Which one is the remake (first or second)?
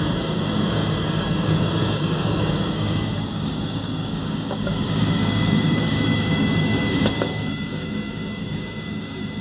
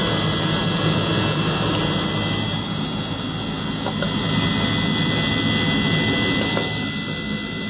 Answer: first